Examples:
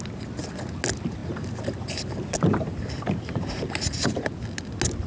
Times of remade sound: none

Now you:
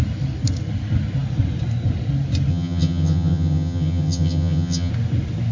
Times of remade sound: 2.5-4.9 (vocoder, HiFi-GAN)

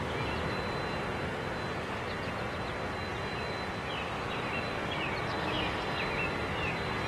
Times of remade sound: none

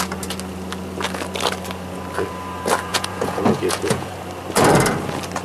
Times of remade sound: 2.9-4.1 (vocoder, Vocos)

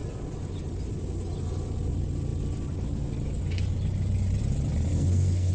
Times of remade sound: 4.9-5.5 (codec, SNAC)

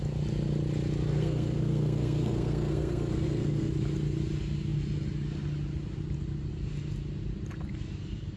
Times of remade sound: 1.1-3.7 (codec, SNAC)